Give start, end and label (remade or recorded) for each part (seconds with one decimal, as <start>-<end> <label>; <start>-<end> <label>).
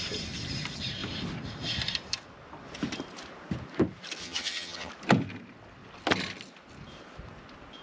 0.0-4.2 recorded; 4.2-4.9 remade; 4.9-7.8 recorded